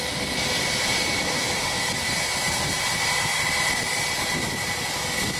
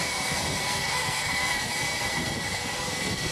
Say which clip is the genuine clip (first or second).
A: first